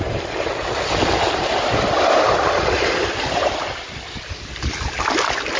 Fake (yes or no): no